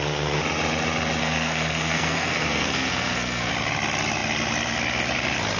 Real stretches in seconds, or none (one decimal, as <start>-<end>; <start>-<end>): 0.0-1.2; 3.5-5.6